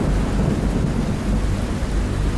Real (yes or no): yes